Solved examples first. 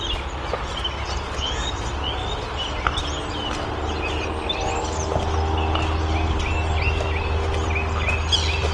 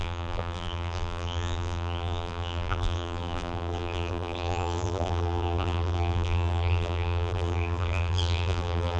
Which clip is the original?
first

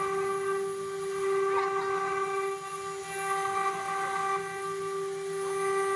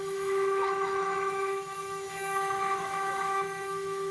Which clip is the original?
first